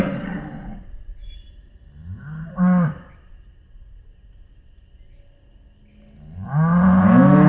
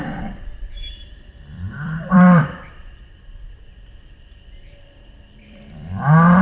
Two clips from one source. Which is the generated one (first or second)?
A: second